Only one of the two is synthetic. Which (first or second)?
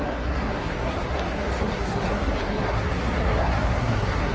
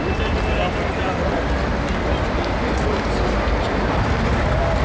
first